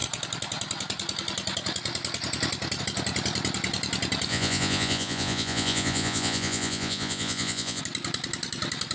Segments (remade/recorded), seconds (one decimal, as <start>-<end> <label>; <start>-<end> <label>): 0.0-4.3 recorded; 4.3-7.8 remade; 7.8-8.9 recorded